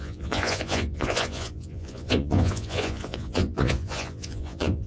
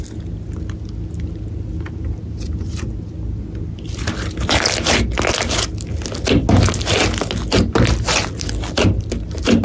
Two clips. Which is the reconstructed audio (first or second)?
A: first